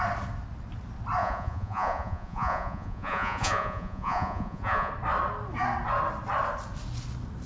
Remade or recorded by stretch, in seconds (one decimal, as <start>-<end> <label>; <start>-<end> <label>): 0.0-1.2 recorded; 1.2-4.9 remade; 4.9-7.5 recorded